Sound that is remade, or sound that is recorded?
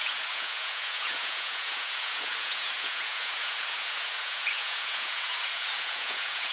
remade